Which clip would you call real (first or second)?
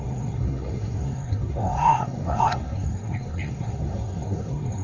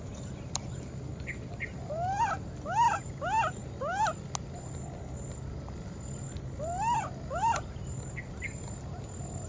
second